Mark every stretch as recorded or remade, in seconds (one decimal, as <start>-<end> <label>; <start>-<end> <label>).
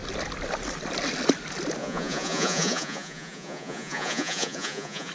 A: 0.0-1.8 recorded; 1.8-5.1 remade